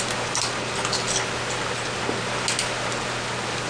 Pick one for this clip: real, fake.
real